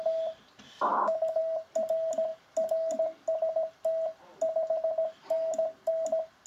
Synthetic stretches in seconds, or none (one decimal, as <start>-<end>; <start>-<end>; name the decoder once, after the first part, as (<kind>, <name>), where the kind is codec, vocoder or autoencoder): 0.9-1.4 (autoencoder, DAC-VAE)